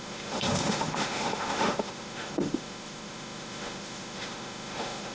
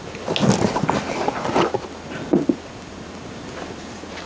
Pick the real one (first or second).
second